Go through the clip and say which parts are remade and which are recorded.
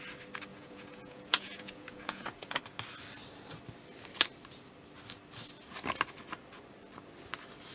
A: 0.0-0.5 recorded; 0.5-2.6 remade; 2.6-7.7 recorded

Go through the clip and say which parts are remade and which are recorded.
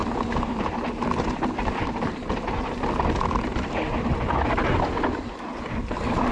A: 0.0-0.7 remade; 0.7-1.6 recorded; 1.6-4.4 remade; 4.4-6.3 recorded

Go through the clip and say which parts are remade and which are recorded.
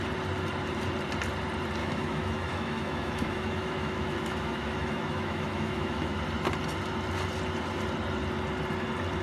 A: 0.0-1.8 recorded; 1.8-6.2 remade; 6.2-9.2 recorded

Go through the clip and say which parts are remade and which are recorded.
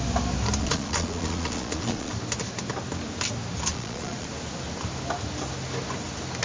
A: 0.0-0.6 recorded; 0.6-2.1 remade; 2.1-3.7 recorded; 3.7-4.3 remade; 4.3-6.4 recorded